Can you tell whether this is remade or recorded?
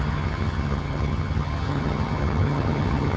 remade